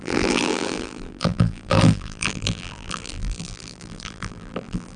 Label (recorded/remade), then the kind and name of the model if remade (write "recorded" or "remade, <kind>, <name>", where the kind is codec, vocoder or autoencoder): remade, vocoder, BigVGAN v2